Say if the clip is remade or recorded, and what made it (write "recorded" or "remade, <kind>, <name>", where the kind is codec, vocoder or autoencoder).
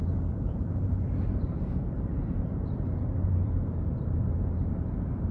remade, vocoder, BigVGAN v2